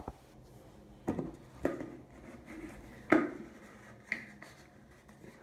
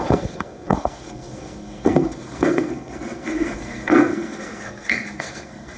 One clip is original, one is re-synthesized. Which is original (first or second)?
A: first